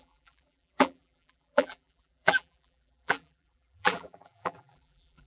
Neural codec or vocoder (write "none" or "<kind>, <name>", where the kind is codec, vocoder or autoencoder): vocoder, BigVGAN v2